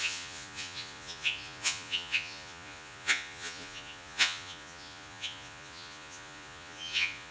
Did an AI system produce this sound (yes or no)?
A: yes